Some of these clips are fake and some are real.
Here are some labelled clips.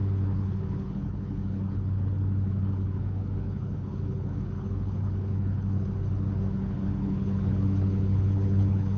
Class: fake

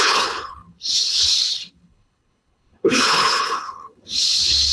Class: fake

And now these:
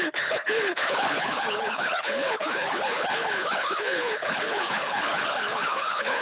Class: fake